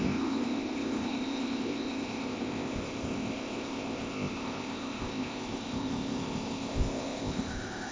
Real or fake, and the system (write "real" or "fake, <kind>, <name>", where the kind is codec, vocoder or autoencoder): fake, codec, ZipCodec